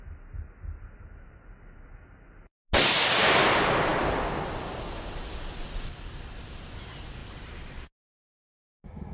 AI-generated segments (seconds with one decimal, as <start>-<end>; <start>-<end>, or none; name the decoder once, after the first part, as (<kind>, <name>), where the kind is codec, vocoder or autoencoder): none